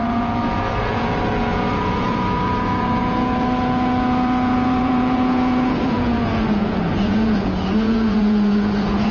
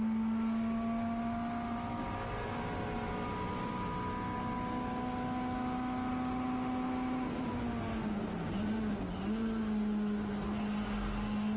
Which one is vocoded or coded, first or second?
first